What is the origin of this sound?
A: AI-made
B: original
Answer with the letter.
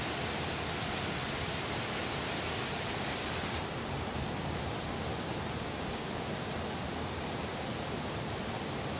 B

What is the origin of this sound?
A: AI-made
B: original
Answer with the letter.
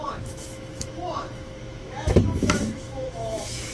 A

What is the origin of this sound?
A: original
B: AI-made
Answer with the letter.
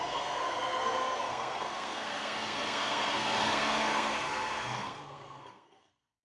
B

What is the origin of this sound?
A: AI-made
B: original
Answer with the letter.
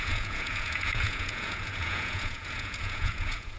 A